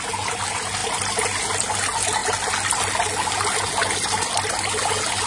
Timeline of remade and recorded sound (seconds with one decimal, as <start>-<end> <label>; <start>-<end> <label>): 0.0-5.3 recorded